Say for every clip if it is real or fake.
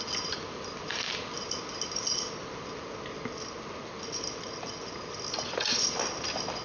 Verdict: real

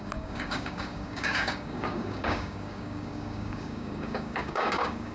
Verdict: fake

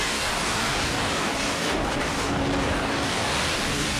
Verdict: fake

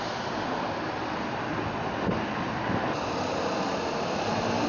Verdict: real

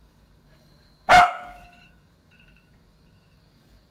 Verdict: fake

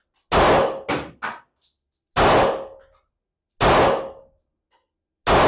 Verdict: real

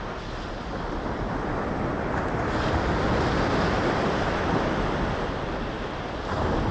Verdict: real